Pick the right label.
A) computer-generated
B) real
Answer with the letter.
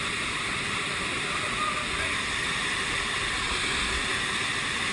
B